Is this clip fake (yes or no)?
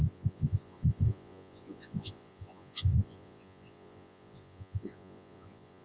yes